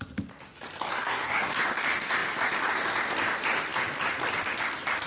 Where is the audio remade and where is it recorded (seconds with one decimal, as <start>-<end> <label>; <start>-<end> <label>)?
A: 0.0-0.9 recorded; 0.9-1.6 remade; 1.6-5.1 recorded